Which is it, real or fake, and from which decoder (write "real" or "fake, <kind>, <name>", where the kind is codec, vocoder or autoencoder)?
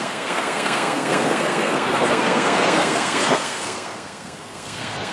fake, codec, SNAC